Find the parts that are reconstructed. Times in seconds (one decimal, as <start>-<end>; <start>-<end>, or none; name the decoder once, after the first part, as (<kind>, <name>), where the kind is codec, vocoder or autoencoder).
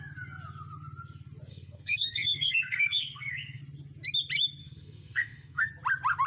1.5-3.6 (codec, SNAC); 4.6-5.7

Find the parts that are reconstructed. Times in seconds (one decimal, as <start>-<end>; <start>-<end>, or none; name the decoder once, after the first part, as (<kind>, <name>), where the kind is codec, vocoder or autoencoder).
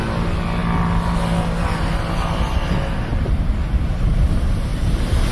none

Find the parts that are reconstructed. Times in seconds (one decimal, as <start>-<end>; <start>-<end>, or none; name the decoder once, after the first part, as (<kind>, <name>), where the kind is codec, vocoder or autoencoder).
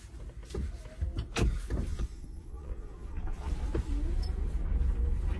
1.9-3.5 (vocoder, Vocos)